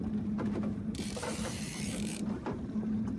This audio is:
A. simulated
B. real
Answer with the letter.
A